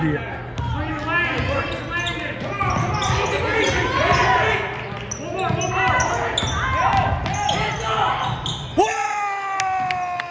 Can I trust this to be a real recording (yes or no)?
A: yes